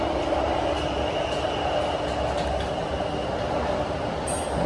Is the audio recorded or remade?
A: recorded